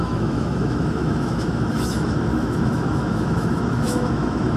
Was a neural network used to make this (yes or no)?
yes